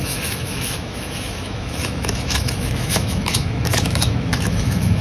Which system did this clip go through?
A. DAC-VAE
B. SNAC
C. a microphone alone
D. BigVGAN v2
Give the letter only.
A